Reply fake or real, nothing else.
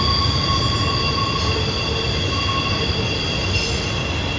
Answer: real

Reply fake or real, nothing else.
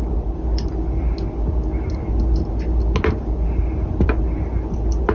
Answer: real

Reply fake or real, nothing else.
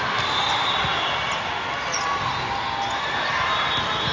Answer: real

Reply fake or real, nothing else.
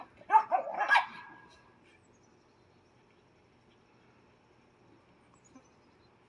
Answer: real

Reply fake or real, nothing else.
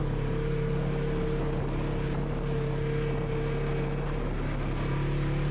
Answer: real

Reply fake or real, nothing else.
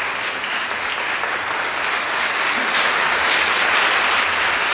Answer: fake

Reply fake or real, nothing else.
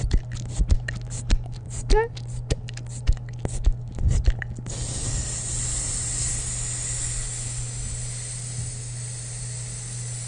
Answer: real